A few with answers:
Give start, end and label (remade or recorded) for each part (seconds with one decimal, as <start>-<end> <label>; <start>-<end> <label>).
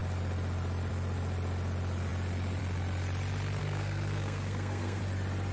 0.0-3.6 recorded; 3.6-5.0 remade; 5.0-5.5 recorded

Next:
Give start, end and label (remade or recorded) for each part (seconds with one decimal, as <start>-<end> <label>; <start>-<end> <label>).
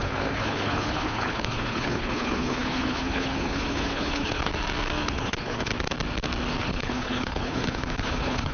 0.0-4.5 remade; 4.5-5.1 recorded; 5.1-5.7 remade; 5.7-6.6 recorded; 6.6-8.5 remade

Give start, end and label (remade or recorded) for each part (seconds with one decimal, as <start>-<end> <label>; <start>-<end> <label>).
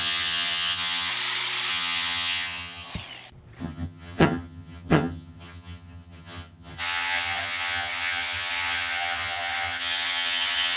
0.0-1.1 remade; 1.1-1.7 recorded; 1.7-2.9 remade; 2.9-3.6 recorded; 3.6-10.8 remade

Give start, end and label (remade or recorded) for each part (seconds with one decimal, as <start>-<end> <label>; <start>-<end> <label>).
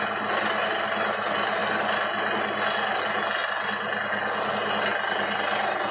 0.0-5.9 recorded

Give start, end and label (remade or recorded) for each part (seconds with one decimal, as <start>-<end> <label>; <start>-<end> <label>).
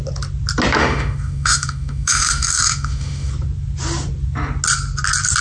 0.0-0.8 recorded; 0.8-3.3 remade; 3.3-5.4 recorded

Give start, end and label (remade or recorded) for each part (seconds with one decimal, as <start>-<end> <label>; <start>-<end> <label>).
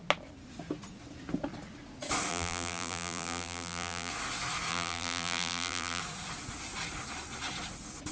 0.0-2.3 recorded; 2.3-4.1 remade; 4.1-4.7 recorded; 4.7-6.0 remade; 6.0-8.1 recorded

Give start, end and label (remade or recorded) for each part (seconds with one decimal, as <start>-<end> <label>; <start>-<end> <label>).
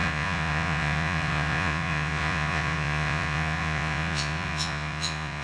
0.0-5.4 remade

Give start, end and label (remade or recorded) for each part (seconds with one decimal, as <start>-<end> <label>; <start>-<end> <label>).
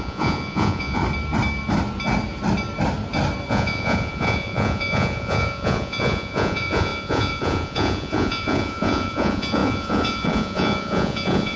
0.0-1.0 remade; 1.0-3.5 recorded; 3.5-11.6 remade